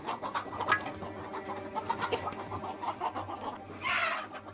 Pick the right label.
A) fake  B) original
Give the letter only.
B